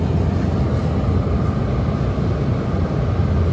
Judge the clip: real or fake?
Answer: real